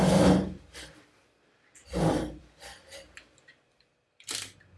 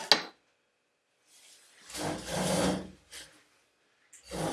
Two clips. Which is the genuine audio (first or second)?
second